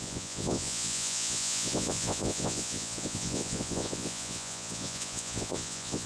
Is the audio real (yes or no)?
no